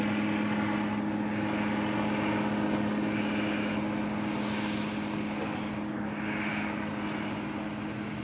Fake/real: real